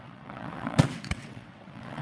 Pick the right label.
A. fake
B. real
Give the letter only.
A